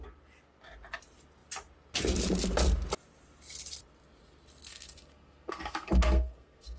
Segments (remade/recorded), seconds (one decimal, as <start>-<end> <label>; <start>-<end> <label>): 0.0-4.7 recorded; 4.7-6.8 remade